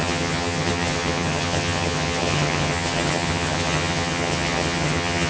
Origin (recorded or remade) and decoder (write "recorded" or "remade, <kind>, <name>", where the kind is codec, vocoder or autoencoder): remade, vocoder, HiFi-GAN